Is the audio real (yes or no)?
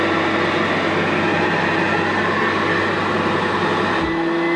yes